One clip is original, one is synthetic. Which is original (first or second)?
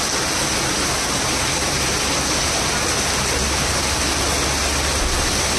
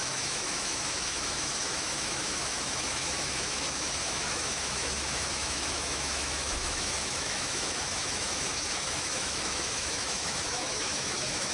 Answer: first